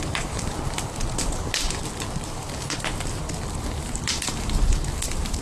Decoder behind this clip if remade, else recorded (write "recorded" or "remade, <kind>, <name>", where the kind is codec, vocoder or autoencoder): remade, vocoder, BigVGAN v2